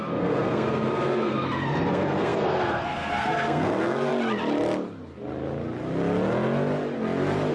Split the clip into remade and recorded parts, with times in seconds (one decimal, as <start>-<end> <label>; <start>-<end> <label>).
0.0-4.1 remade; 4.1-7.5 recorded